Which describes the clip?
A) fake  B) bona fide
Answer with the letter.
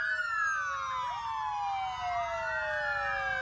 B